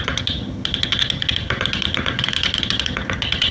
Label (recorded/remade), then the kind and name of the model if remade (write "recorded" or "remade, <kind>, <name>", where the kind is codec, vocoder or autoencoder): remade, vocoder, HiFi-GAN